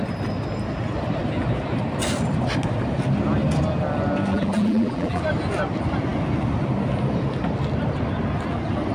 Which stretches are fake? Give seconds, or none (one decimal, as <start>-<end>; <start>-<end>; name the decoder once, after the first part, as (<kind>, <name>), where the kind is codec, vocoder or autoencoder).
4.3-5.2 (vocoder, BigVGAN v2)